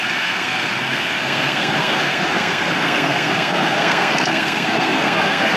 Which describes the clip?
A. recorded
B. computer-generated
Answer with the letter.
B